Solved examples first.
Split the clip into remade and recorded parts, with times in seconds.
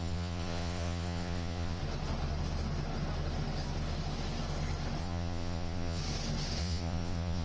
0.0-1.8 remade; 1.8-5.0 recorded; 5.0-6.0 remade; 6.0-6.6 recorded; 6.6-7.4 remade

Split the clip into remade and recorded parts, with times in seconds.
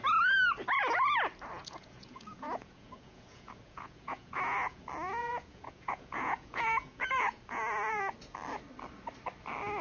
0.0-1.6 recorded; 1.6-4.8 remade; 4.8-5.2 recorded; 5.2-8.0 remade; 8.0-9.8 recorded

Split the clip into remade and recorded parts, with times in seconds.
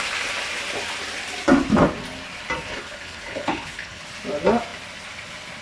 0.0-2.7 recorded; 2.7-4.0 remade; 4.0-5.6 recorded